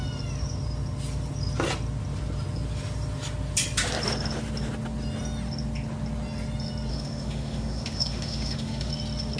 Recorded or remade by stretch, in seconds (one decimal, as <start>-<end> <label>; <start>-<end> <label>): 0.0-6.9 recorded; 6.9-8.9 remade; 8.9-9.4 recorded